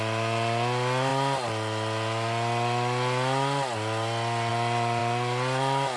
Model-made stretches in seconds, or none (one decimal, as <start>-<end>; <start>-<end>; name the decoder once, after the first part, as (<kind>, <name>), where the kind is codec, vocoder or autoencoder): none